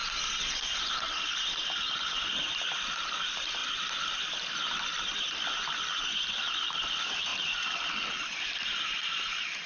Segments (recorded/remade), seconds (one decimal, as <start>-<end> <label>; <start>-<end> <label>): 0.0-9.7 recorded